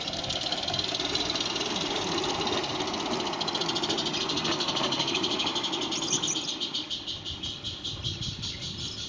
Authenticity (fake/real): real